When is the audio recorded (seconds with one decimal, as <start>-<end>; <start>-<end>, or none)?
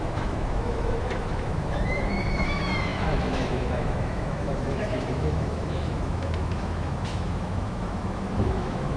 none